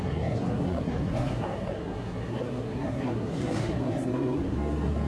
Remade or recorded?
remade